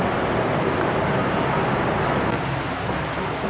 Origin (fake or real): real